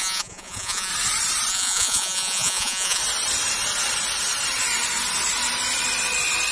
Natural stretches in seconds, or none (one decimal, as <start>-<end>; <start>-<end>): 0.9-1.5; 3.0-6.5